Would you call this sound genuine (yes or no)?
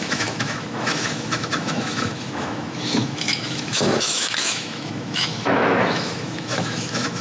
no